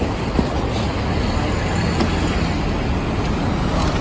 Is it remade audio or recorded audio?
recorded